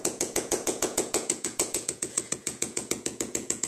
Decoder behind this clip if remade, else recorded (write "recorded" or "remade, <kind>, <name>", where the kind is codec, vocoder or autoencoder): remade, vocoder, Vocos